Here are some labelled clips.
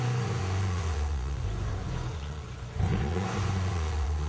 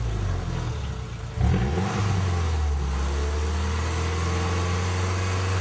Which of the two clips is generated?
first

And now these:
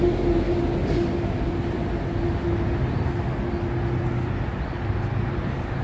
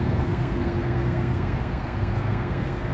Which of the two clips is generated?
second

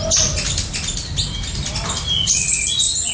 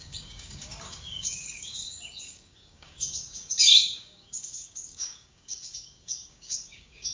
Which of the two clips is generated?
second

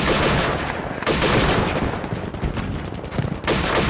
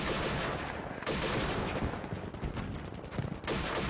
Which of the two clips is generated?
first